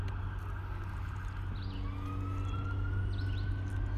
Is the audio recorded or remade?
recorded